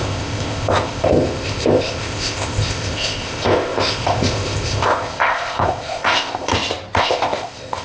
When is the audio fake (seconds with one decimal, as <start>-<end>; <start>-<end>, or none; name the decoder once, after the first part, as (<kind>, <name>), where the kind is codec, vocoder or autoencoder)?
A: 0.0-6.5 (codec, ZipCodec); 7.0-7.8